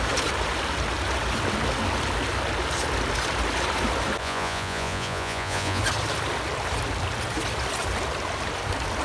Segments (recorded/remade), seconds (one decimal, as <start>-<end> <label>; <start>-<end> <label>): 0.0-4.2 recorded; 4.2-5.8 remade; 5.8-9.0 recorded